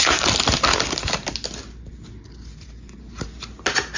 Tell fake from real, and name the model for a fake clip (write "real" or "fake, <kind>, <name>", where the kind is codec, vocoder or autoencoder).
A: real